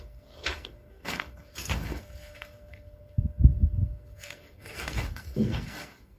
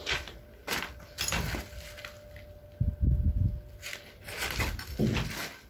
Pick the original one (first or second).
second